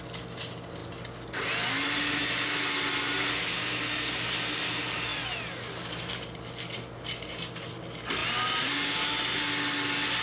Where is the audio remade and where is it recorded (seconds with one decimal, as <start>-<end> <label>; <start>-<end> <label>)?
0.0-10.2 recorded